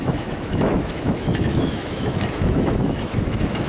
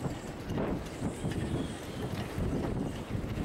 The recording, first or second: second